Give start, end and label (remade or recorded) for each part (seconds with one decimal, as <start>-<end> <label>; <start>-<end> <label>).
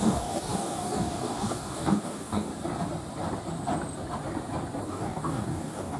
0.0-2.5 remade; 2.5-4.8 recorded; 4.8-6.0 remade